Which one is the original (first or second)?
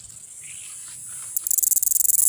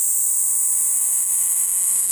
first